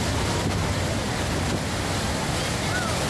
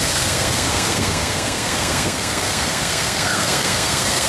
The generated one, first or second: second